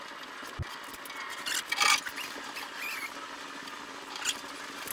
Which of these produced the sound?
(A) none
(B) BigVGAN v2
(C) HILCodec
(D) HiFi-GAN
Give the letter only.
A